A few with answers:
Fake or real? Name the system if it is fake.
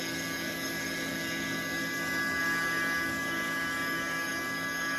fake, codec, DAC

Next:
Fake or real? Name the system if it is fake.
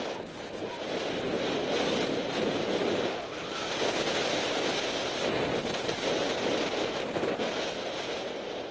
real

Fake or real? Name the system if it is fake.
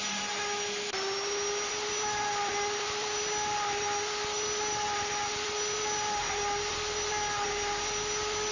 real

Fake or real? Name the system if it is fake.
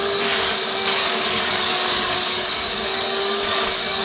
fake, codec, DAC